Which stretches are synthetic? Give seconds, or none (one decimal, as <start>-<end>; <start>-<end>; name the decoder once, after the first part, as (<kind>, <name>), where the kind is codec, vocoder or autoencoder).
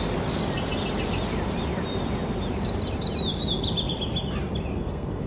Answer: 4.7-5.3 (codec, SNAC)